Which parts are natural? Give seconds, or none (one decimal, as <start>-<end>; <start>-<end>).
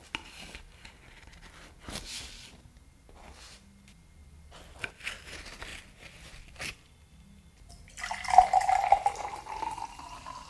0.0-4.2; 4.9-5.7; 7.7-10.5